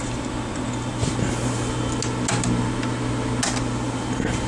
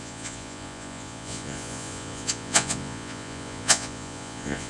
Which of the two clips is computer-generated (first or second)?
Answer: second